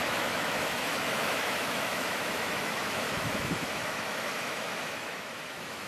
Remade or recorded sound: remade